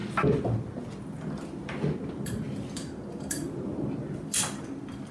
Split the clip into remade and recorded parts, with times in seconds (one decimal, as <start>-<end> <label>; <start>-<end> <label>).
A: 0.0-5.1 recorded

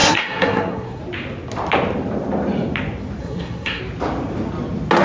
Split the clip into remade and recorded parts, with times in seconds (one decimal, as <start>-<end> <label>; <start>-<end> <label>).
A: 0.0-1.0 remade; 1.0-3.2 recorded; 3.2-3.8 remade; 3.8-5.0 recorded

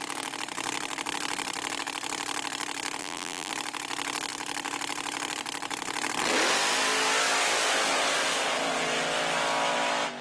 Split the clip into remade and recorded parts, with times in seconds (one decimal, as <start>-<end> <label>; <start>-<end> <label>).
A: 0.0-3.0 recorded; 3.0-3.5 remade; 3.5-10.2 recorded

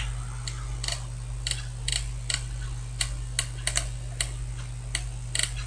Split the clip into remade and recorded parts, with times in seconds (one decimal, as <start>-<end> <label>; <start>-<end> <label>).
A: 0.0-5.7 recorded

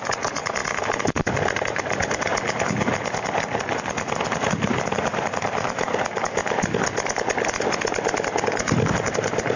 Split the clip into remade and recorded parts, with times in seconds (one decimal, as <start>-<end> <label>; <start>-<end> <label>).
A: 0.0-0.6 remade; 0.6-1.4 recorded; 1.4-2.3 remade; 2.3-4.3 recorded; 4.3-6.4 remade; 6.4-8.4 recorded; 8.4-9.6 remade

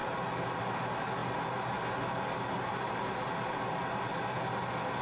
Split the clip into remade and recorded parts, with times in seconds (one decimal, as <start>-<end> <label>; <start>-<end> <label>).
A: 0.0-5.0 recorded

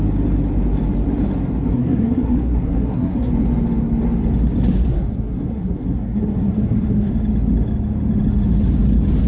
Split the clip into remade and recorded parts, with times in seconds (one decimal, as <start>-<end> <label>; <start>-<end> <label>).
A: 0.0-1.7 recorded; 1.7-3.3 remade; 3.3-4.9 recorded; 4.9-7.1 remade; 7.1-9.3 recorded